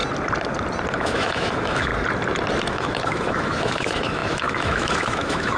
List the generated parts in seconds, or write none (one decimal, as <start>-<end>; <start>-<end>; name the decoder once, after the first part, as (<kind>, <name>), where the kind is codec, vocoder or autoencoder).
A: 0.9-1.9 (autoencoder, DAC-VAE); 2.7-5.6